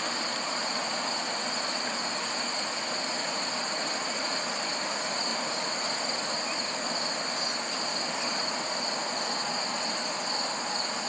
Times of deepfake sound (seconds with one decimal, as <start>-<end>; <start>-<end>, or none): 4.0-4.7; 5.3-5.8